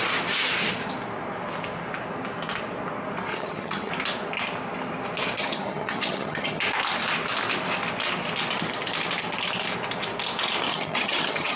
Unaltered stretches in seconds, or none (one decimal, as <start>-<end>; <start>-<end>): 0.0-3.3; 3.9-5.4; 6.6-10.7